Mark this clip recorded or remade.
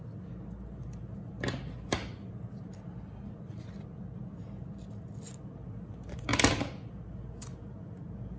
recorded